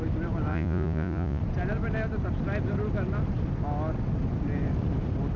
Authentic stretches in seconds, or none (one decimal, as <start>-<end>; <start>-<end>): 0.0-0.5; 1.4-5.4